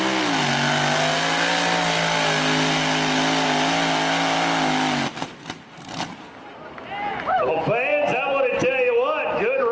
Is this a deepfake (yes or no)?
no